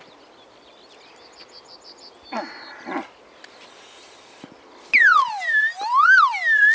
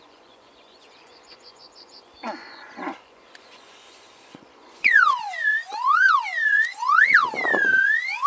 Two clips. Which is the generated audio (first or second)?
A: second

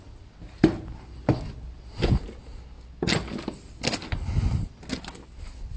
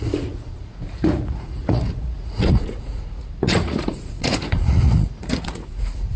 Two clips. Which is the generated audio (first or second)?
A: second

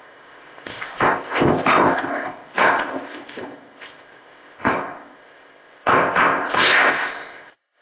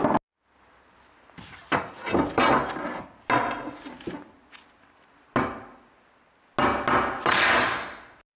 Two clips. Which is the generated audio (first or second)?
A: first